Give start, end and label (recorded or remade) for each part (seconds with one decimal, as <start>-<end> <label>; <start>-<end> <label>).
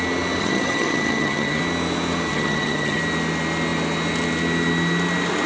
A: 0.0-0.4 recorded; 0.4-1.6 remade; 1.6-2.3 recorded; 2.3-3.0 remade; 3.0-5.5 recorded